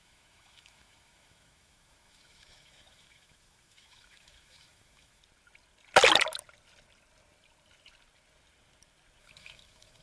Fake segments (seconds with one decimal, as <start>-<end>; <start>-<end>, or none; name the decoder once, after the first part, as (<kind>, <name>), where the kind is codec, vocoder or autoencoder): 0.0-5.2 (autoencoder, DAC-VAE); 9.2-10.0